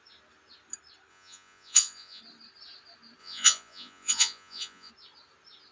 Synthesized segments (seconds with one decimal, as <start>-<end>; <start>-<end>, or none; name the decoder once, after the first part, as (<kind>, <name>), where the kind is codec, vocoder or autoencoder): 1.1-2.2 (vocoder, Vocos); 3.2-4.9